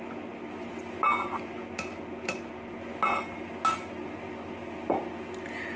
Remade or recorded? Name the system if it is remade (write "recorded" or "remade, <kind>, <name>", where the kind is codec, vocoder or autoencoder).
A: recorded